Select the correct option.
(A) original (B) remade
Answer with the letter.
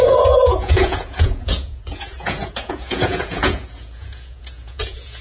B